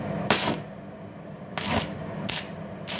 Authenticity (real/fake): real